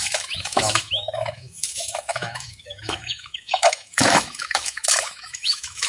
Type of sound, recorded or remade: remade